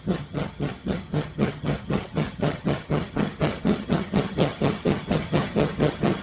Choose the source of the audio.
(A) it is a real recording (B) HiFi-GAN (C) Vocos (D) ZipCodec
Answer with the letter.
B